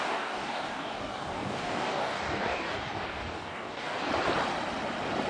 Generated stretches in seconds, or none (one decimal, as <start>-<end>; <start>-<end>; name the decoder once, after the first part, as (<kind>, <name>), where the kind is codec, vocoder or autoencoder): 0.0-4.1 (codec, DAC)

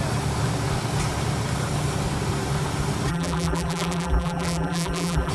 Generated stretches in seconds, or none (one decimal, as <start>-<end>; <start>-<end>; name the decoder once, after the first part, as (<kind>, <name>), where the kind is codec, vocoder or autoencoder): 3.1-5.3 (vocoder, BigVGAN v2)

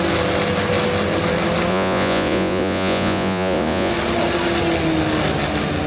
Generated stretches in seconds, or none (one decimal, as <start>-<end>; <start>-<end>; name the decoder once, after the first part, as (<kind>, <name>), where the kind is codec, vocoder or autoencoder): 1.7-3.9 (vocoder, Vocos)